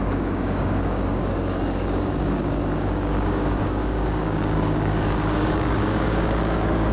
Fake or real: fake